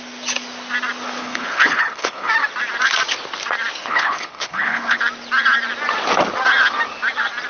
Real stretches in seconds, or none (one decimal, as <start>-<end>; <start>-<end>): 0.0-1.2; 2.3-3.8; 5.0-7.5

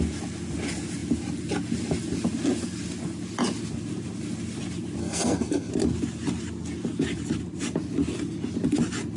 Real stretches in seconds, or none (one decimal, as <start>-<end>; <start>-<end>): 0.0-5.0; 5.7-9.2

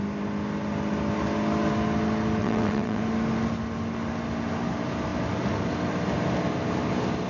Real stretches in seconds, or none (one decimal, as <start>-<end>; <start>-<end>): 0.0-2.4; 3.0-7.3

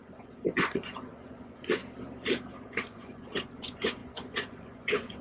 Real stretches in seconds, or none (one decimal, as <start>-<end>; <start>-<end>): 1.8-2.6

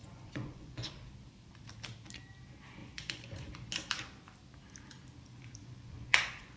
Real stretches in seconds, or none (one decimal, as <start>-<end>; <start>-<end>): 0.9-2.8; 3.7-5.6

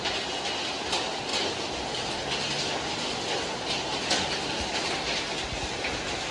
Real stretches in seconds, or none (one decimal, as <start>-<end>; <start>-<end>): 0.0-6.3

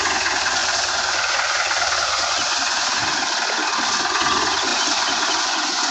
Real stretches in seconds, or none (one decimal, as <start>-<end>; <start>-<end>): 3.0-4.1

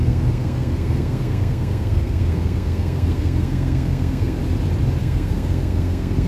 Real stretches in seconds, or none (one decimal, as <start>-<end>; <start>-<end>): 4.4-5.0